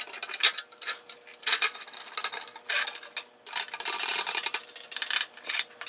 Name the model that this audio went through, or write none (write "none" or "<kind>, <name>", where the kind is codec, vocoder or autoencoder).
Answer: none